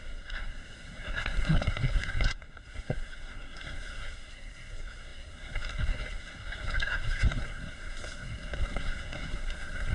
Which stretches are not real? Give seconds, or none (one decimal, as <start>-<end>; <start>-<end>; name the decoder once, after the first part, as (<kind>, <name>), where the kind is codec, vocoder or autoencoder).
0.0-9.9 (codec, SNAC)